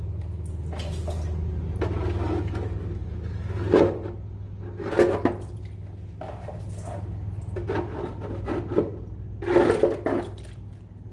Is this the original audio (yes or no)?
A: yes